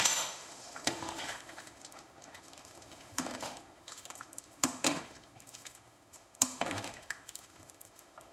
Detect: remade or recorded remade